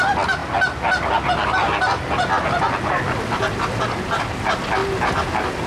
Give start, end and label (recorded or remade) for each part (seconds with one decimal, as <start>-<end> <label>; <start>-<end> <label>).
0.0-5.7 recorded